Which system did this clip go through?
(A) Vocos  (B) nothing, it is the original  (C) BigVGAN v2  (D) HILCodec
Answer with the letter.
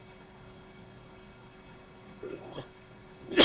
D